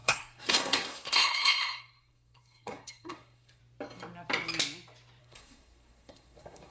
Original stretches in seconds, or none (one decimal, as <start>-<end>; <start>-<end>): 3.6-5.2